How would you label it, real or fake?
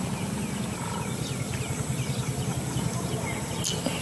real